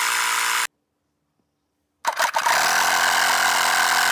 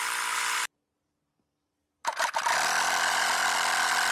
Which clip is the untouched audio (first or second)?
first